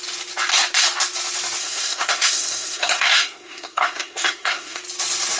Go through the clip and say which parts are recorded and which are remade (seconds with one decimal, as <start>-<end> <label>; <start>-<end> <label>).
0.0-1.6 recorded; 1.6-4.8 remade; 4.8-5.4 recorded